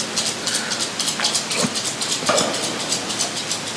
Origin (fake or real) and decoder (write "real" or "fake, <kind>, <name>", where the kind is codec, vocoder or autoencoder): real